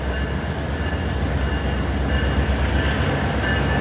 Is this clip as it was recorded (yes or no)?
yes